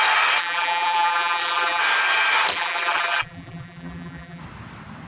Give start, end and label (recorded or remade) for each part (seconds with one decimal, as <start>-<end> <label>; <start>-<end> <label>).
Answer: 0.0-0.4 recorded; 0.4-1.8 remade; 1.8-2.5 recorded; 2.5-4.4 remade; 4.4-5.1 recorded